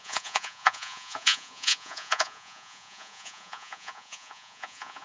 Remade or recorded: remade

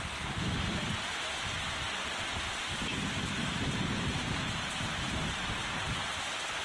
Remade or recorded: recorded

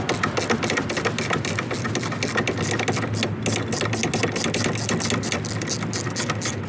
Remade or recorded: recorded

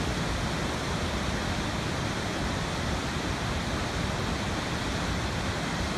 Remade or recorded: recorded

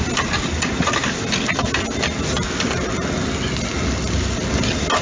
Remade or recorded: recorded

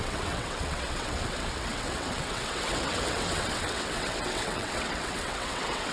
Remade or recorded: remade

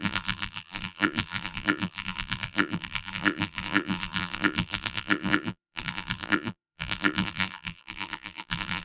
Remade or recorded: remade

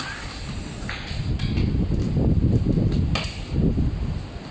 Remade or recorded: recorded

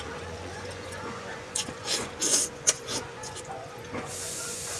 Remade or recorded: remade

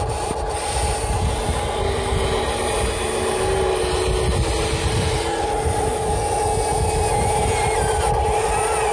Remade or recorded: recorded